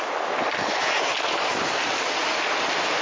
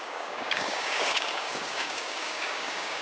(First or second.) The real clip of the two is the first